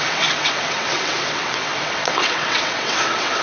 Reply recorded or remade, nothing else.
remade